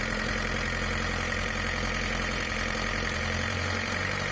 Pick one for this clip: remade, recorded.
remade